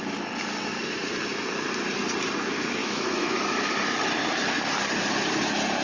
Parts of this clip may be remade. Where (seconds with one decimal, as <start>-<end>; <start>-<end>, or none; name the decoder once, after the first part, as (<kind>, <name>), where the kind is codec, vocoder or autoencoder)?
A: 2.8-3.7 (autoencoder, DAC-VAE)